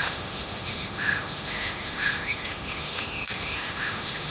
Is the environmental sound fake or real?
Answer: fake